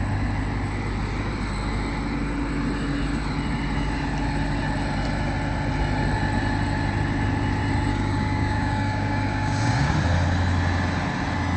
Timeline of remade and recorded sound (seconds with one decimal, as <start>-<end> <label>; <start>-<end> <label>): 0.0-7.9 recorded; 7.9-9.9 remade; 9.9-11.6 recorded